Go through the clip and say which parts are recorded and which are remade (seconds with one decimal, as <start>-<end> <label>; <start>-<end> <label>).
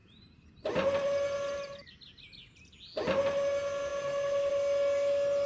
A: 0.0-1.9 remade; 1.9-5.5 recorded